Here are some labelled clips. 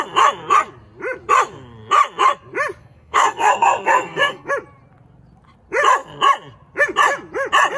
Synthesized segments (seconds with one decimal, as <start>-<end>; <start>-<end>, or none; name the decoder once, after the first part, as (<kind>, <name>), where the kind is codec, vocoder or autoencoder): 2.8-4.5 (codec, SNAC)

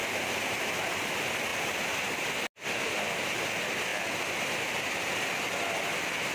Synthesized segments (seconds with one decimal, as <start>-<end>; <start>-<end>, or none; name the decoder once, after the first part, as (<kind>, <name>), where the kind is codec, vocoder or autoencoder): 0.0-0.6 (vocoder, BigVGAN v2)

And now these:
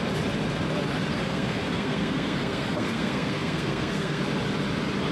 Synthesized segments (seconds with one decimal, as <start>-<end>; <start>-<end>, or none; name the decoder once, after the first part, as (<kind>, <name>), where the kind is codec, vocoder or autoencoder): 1.1-4.2 (codec, SNAC)

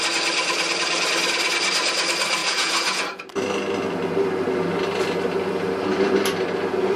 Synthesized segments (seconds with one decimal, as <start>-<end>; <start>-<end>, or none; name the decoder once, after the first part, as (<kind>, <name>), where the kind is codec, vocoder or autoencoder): 2.4-3.2 (vocoder, Vocos)

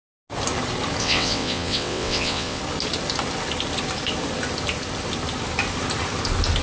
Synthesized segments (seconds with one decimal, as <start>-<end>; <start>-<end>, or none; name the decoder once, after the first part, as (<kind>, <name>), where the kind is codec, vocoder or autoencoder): 1.0-2.6 (vocoder, WaveNeXt)

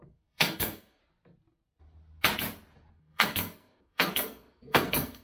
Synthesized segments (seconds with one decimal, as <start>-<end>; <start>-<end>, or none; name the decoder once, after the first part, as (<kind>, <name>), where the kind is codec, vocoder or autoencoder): 0.0-1.0 (codec, SNAC); 2.9-5.2

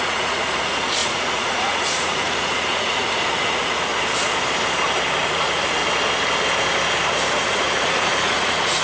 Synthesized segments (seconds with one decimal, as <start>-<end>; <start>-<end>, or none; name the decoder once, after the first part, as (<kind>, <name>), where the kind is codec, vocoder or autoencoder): 0.0-3.9 (vocoder, Vocos); 5.2-5.8; 7.5-8.8